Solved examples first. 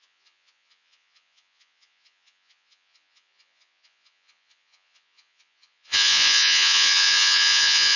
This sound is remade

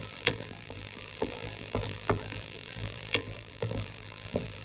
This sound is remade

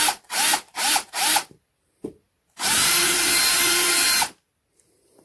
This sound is remade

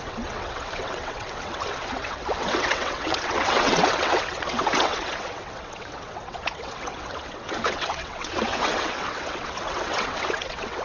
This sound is remade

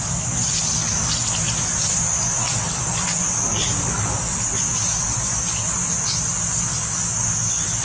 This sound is recorded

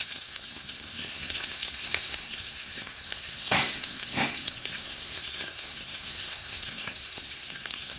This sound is remade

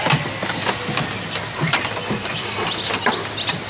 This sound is recorded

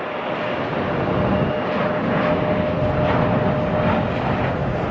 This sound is recorded